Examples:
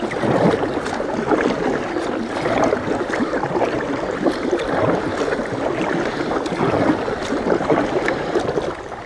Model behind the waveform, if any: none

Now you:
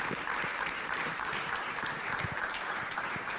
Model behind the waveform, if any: vocoder, BigVGAN v2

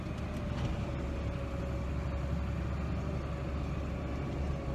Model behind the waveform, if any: none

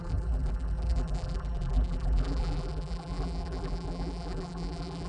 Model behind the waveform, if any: vocoder, BigVGAN v2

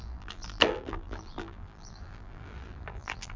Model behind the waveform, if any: vocoder, BigVGAN v2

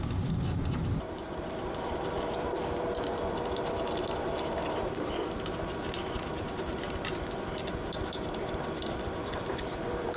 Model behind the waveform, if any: vocoder, BigVGAN v2